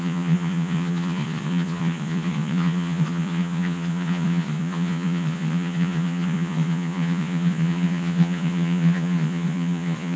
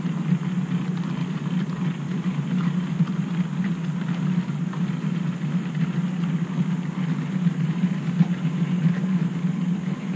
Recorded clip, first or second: second